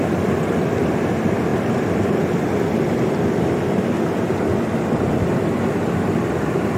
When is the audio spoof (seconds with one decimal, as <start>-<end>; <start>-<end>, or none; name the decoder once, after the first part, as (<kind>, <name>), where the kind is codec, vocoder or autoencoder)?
none